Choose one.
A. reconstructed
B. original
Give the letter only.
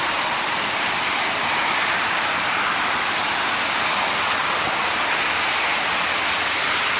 B